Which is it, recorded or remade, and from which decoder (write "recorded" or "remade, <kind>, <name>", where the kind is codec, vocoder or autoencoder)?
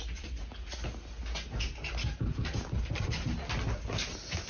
recorded